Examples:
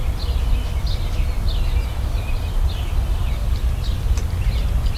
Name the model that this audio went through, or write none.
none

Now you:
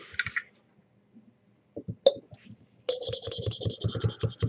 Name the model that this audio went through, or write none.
none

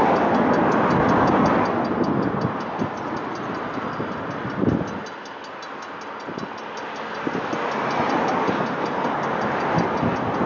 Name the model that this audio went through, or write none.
none